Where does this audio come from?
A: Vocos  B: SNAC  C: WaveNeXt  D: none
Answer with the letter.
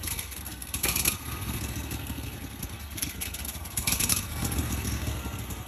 B